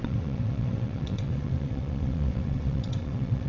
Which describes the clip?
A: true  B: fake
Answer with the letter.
B